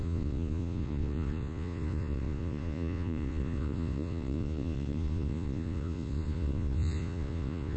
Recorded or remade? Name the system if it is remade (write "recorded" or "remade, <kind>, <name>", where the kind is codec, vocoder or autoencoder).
remade, vocoder, Vocos